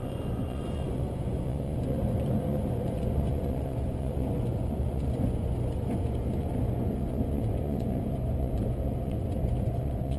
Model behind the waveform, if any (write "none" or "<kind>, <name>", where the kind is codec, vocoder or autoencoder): vocoder, Vocos